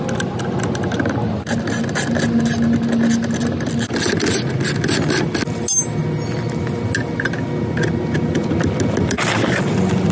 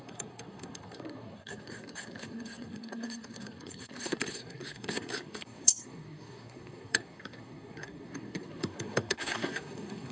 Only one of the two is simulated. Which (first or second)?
second